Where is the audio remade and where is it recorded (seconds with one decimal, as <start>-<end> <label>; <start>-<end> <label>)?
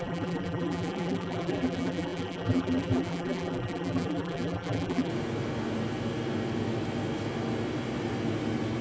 0.0-5.1 remade; 5.1-8.8 recorded